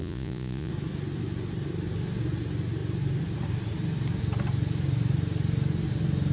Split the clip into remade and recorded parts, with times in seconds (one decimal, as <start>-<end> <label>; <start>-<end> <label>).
0.0-0.7 remade; 0.7-6.3 recorded